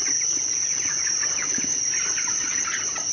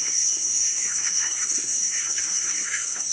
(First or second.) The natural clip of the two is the first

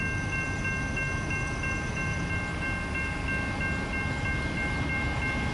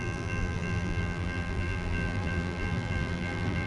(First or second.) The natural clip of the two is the first